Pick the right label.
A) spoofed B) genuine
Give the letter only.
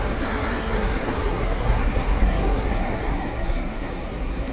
A